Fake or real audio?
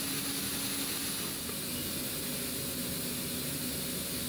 real